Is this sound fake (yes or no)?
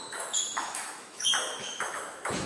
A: yes